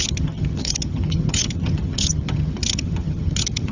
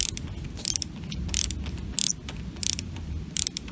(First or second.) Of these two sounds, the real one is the second